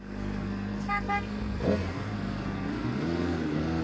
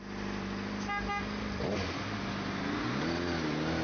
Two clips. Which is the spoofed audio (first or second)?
first